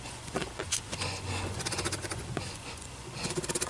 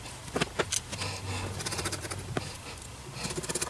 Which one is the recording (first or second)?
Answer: second